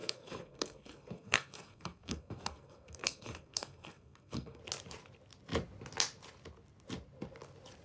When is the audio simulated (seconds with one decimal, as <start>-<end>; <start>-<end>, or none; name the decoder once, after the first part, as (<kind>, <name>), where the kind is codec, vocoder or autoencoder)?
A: 0.0-4.6 (codec, SNAC)